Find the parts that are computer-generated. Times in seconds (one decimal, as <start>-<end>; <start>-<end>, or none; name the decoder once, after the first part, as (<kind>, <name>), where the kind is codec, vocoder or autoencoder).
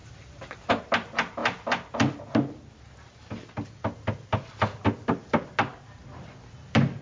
none